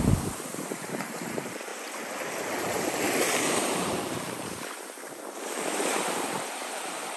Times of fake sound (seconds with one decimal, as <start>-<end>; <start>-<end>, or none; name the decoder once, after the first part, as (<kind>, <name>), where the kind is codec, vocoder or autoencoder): 0.0-1.7 (vocoder, BigVGAN v2); 2.3-7.2